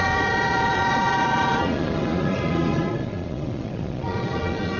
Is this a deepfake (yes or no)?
yes